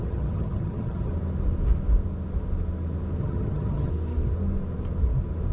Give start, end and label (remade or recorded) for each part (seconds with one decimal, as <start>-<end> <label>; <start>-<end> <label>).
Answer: 0.0-1.1 remade; 1.1-3.2 recorded; 3.2-3.9 remade; 3.9-5.5 recorded